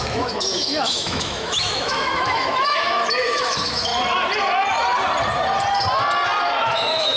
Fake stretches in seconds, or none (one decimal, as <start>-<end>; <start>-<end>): 0.0-3.9; 6.6-7.2